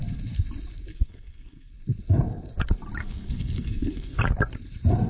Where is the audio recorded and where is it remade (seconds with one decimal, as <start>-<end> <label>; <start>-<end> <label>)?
0.0-0.9 recorded; 0.9-1.7 remade; 1.7-3.0 recorded; 3.0-4.2 remade; 4.2-5.1 recorded

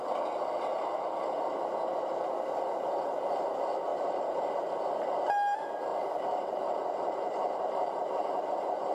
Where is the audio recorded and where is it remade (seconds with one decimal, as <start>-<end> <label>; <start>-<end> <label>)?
0.0-0.7 recorded; 0.7-1.4 remade; 1.4-3.9 recorded; 3.9-4.4 remade; 4.4-5.9 recorded; 5.9-8.5 remade; 8.5-8.9 recorded